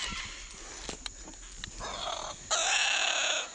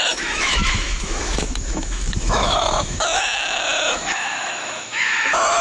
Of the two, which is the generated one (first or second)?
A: second